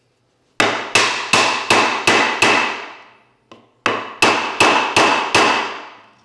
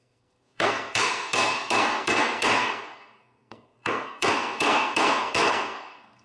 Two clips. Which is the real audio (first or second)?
first